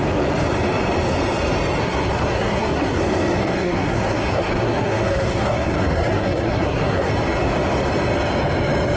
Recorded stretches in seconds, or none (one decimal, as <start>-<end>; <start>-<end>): 0.0-1.8; 3.0-3.4; 7.1-9.0